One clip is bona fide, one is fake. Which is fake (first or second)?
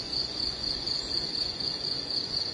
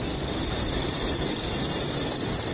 first